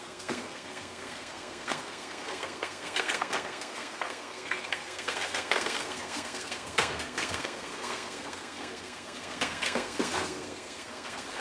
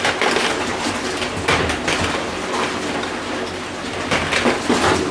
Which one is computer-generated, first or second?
first